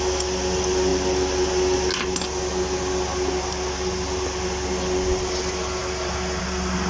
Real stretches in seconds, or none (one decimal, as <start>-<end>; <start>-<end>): 0.0-6.9